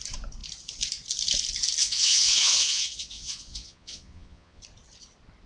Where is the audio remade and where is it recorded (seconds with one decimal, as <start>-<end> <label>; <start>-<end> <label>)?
0.0-1.8 recorded; 1.8-4.6 remade; 4.6-5.5 recorded